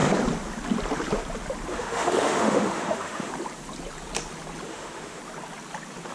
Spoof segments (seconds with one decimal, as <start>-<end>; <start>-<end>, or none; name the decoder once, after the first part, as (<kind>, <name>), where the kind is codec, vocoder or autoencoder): 1.7-3.3 (autoencoder, DAC-VAE); 4.7-5.2